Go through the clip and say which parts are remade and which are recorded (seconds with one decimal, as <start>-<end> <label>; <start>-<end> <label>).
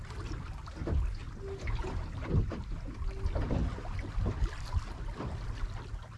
0.0-6.2 recorded